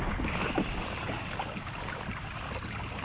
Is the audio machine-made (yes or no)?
no